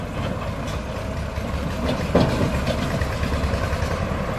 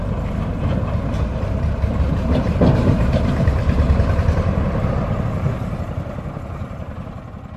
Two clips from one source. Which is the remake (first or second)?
second